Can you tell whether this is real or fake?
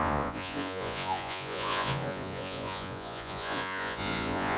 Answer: fake